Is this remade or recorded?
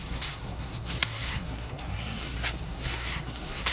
remade